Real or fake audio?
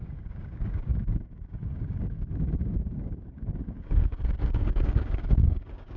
fake